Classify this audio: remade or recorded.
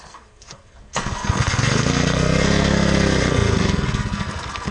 remade